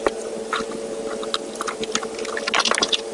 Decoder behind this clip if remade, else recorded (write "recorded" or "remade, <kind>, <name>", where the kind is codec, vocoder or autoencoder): recorded